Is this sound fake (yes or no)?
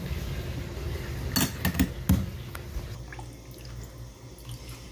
no